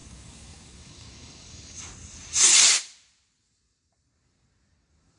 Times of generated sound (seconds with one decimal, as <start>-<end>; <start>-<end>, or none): 0.0-1.8